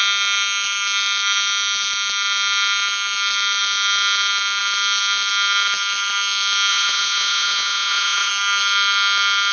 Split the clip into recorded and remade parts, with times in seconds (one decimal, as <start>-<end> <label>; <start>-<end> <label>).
0.0-6.7 recorded; 6.7-8.3 remade; 8.3-9.5 recorded